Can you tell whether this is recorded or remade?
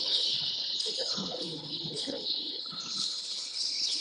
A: remade